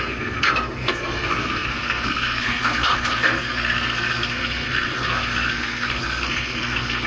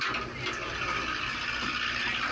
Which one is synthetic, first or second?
first